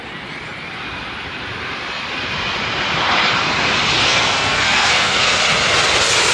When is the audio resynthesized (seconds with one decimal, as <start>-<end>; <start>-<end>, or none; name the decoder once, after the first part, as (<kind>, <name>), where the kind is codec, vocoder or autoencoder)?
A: 4.0-5.4 (codec, SNAC)

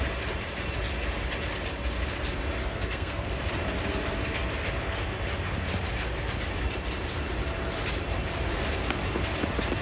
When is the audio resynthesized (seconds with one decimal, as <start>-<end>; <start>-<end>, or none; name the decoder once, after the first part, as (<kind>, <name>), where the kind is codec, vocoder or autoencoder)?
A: 2.6-3.3 (codec, SNAC)

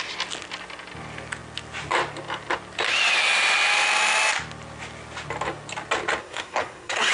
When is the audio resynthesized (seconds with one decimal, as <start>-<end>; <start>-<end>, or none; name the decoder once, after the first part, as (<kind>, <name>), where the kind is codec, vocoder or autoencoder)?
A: 6.2-7.1 (codec, SNAC)

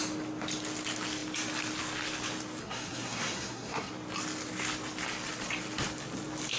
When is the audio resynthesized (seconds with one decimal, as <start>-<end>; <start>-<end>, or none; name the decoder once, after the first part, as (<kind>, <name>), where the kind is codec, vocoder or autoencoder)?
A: 2.6-3.9 (codec, SNAC)

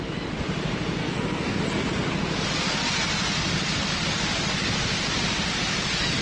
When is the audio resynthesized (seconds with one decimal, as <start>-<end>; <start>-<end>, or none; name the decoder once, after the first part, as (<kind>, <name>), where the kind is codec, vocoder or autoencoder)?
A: 1.0-1.6 (codec, SNAC)

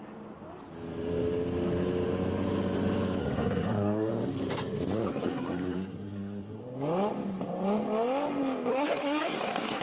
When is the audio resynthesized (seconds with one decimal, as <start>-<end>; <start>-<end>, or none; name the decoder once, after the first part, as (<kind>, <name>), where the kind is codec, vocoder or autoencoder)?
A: 3.2-4.1 (codec, SNAC); 5.1-6.6; 8.7-9.8

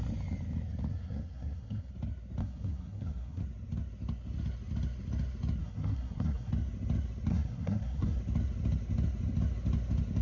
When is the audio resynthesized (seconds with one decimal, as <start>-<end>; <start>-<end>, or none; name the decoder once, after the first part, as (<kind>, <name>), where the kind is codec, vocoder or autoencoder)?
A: 0.9-1.9 (codec, SNAC); 2.4-3.4; 5.6-6.5; 7.3-8.2